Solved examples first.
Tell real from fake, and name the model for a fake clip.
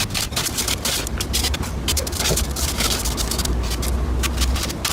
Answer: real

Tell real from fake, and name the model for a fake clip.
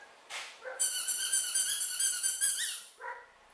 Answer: fake, vocoder, BigVGAN v2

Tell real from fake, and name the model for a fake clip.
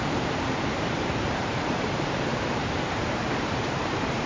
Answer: fake, vocoder, BigVGAN v2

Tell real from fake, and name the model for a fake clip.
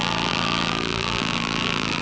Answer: fake, vocoder, BigVGAN v2